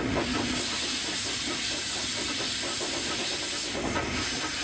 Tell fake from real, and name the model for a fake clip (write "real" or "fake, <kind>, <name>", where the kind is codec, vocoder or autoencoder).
real